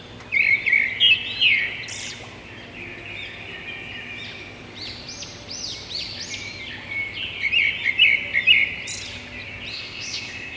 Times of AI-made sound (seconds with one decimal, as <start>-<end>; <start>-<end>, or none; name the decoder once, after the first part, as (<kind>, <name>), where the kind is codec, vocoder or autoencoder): 9.7-10.6 (codec, ZipCodec)